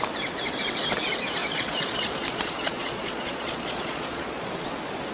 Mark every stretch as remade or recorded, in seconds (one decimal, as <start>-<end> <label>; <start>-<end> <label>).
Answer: 0.0-1.4 recorded; 1.4-4.5 remade; 4.5-5.1 recorded